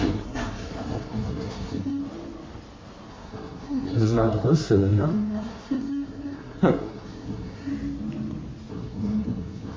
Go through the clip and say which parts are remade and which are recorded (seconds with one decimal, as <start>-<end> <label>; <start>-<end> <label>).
0.0-2.0 remade; 2.0-3.1 recorded; 3.1-7.7 remade; 7.7-8.7 recorded; 8.7-9.8 remade